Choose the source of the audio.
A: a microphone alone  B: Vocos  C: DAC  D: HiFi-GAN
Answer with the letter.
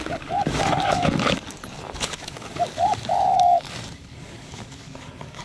C